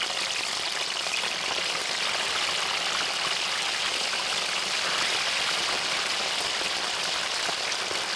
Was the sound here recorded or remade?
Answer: recorded